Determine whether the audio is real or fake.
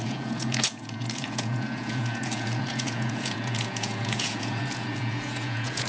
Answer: fake